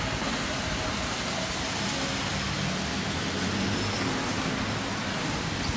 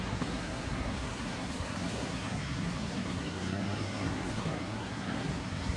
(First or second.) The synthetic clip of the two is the second